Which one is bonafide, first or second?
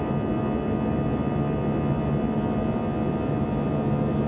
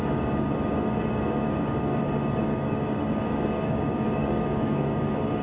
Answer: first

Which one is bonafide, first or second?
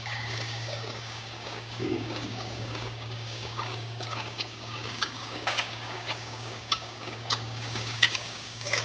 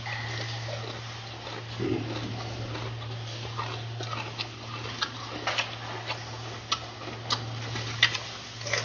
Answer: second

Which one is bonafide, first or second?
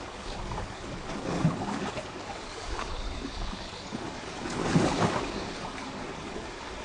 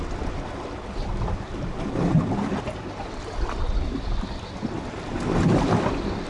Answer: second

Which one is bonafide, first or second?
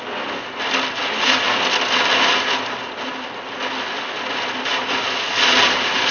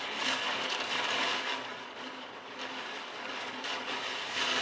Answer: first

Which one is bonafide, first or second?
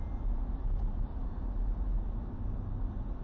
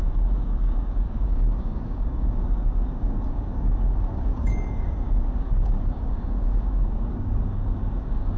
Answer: first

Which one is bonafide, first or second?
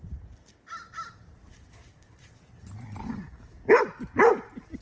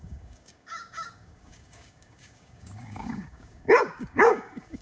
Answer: first